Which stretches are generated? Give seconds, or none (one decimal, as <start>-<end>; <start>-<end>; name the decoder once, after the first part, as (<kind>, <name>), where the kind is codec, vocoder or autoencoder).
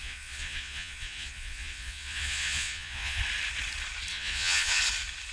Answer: 0.0-3.2 (vocoder, Vocos); 4.1-4.8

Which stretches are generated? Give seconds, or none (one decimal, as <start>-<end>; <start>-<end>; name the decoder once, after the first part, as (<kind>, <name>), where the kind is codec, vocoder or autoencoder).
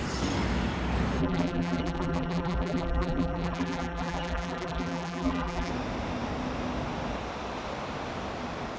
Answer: 1.2-5.7 (vocoder, BigVGAN v2)